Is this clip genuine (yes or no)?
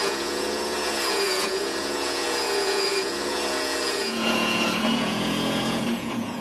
no